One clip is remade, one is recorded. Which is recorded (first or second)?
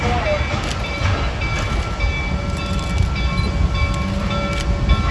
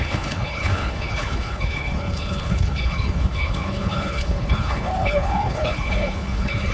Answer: first